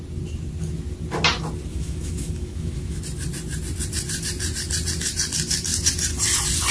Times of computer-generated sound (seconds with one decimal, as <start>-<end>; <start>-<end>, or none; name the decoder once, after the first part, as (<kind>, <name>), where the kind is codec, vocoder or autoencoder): 1.7-3.0 (autoencoder, DAC-VAE)